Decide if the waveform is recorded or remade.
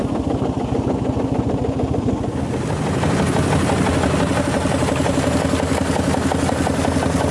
recorded